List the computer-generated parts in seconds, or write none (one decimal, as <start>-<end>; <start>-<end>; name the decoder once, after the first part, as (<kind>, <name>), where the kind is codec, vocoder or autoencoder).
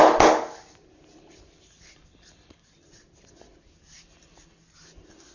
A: none